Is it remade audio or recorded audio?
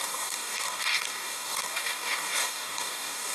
remade